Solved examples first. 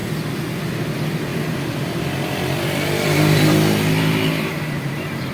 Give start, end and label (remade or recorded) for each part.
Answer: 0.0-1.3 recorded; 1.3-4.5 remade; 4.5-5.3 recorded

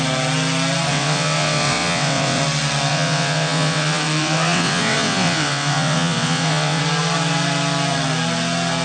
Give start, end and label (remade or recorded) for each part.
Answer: 0.0-0.9 recorded; 0.9-2.4 remade; 2.4-2.9 recorded; 2.9-6.8 remade; 6.8-8.8 recorded